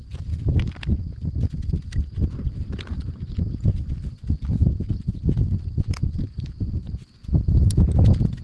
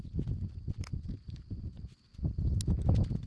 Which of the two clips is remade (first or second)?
first